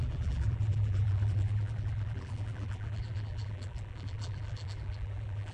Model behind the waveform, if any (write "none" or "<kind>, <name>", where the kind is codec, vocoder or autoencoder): vocoder, BigVGAN v2